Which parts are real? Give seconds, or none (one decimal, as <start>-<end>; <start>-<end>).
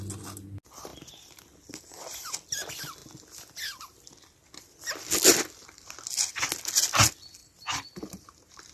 0.0-7.4